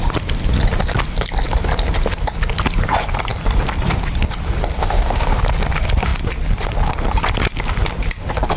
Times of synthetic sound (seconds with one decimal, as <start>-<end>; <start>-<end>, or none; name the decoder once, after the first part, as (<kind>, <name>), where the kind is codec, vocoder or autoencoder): 4.8-5.4 (autoencoder, DAC-VAE)

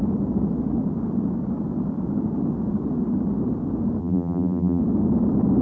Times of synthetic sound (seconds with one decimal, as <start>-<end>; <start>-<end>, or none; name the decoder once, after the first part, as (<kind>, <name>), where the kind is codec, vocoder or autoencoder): 4.0-4.8 (vocoder, BigVGAN v2)

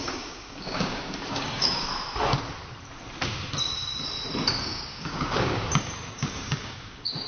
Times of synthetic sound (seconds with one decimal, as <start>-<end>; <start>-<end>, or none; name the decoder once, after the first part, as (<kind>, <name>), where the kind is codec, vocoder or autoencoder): 0.0-1.9 (codec, DAC); 4.6-7.3

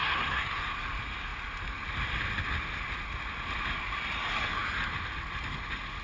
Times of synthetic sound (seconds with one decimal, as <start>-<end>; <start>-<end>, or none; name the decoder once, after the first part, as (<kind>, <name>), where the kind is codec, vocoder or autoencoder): 0.0-0.7 (codec, SNAC)

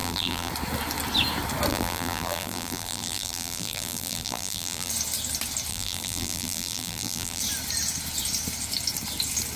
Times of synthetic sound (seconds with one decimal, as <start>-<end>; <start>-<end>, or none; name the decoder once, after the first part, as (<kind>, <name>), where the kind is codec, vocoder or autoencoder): 0.0-0.5 (vocoder, BigVGAN v2); 1.7-4.9; 5.7-7.4